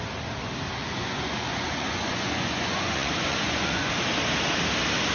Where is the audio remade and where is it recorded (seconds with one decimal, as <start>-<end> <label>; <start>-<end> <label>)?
0.0-0.8 recorded; 0.8-3.9 remade; 3.9-5.1 recorded